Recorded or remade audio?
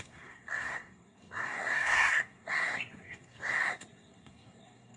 remade